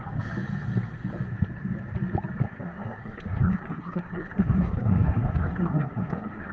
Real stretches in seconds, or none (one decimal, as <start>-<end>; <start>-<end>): 0.0-2.4